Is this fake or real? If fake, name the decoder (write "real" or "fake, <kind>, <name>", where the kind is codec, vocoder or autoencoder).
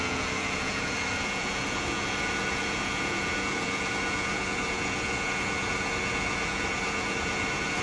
fake, vocoder, Vocos